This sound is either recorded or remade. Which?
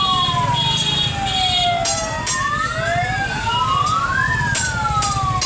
recorded